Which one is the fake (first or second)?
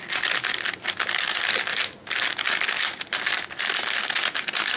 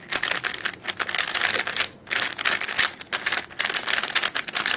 first